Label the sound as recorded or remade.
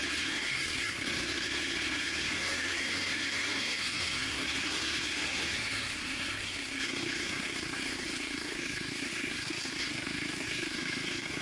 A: remade